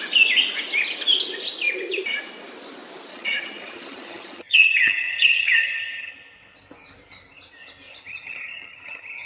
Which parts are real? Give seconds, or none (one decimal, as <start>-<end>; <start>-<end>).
0.0-3.1; 6.1-8.1